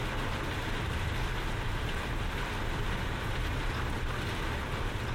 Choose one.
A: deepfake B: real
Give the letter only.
B